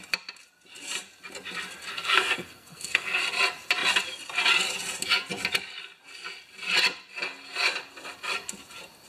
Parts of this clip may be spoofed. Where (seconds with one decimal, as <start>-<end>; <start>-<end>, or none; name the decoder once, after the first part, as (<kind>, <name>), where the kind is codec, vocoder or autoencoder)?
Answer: 1.9-3.2 (codec, SNAC)